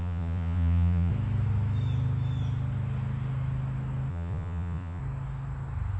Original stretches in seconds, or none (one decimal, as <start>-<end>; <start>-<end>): 1.1-4.1; 5.0-6.0